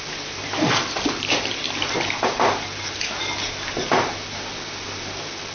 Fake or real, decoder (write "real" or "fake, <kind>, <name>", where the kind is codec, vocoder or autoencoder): real